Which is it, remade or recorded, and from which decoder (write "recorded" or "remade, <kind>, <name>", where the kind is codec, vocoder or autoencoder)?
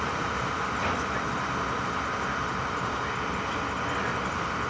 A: recorded